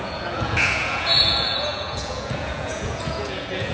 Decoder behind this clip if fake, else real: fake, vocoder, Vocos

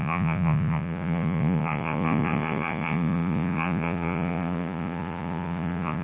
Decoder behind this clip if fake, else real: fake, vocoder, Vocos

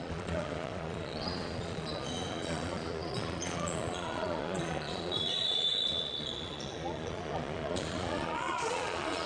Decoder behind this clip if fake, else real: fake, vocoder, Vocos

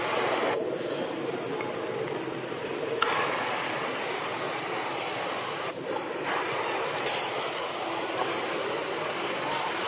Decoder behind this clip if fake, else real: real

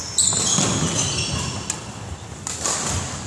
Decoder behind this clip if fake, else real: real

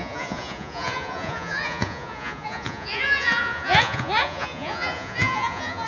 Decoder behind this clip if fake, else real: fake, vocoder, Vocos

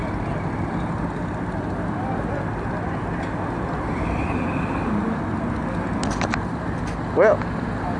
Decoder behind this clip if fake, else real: real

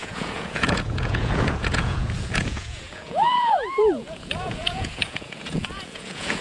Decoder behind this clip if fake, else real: fake, vocoder, Vocos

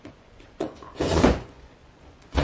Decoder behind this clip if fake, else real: fake, vocoder, Vocos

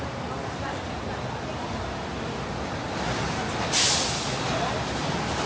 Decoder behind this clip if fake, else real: real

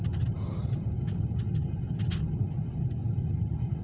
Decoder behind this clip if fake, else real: real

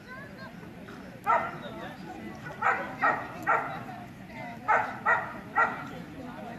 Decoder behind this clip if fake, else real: real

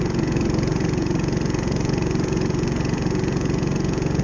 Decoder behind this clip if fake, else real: fake, vocoder, Vocos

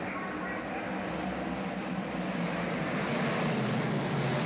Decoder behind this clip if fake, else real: real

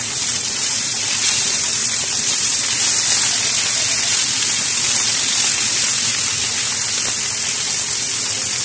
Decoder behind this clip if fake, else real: real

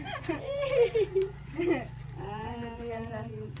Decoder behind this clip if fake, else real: fake, vocoder, Vocos